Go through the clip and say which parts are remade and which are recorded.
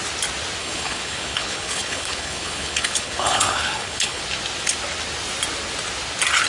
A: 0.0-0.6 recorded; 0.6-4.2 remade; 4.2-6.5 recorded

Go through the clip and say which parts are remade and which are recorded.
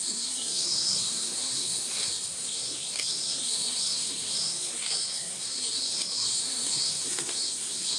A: 0.0-8.0 remade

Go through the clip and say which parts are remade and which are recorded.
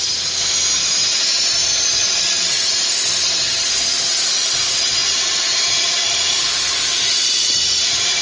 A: 0.0-1.6 recorded; 1.6-2.9 remade; 2.9-5.0 recorded; 5.0-8.2 remade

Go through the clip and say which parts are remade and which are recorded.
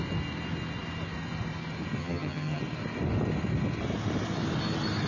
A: 0.0-2.0 recorded; 2.0-2.6 remade; 2.6-5.1 recorded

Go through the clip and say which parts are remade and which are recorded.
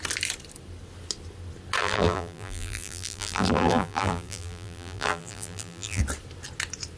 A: 0.0-1.8 recorded; 1.8-6.0 remade; 6.0-7.0 recorded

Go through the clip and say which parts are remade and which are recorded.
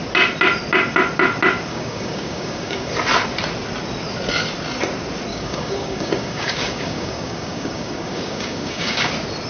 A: 0.0-1.7 recorded; 1.7-2.9 remade; 2.9-5.3 recorded; 5.3-9.1 remade; 9.1-9.5 recorded